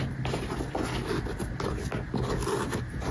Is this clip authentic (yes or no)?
yes